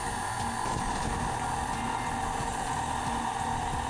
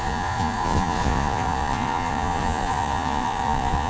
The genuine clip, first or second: first